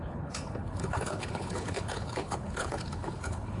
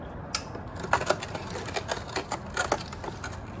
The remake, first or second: first